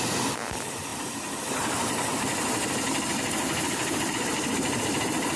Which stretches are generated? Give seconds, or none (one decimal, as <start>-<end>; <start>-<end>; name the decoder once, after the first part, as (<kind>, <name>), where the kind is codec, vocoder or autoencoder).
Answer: none